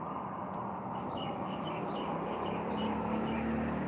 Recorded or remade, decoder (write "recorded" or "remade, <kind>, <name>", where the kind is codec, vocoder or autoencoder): recorded